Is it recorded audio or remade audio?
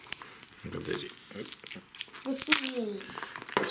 recorded